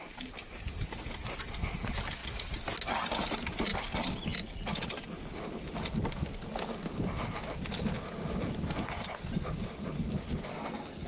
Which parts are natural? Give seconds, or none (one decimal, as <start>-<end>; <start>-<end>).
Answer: 0.0-10.5